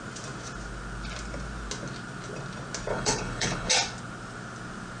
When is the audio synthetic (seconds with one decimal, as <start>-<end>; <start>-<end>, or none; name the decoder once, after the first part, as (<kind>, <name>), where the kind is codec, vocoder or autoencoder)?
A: 2.9-3.7 (codec, HILCodec)